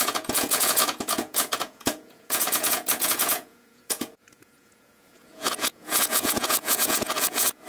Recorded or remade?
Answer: remade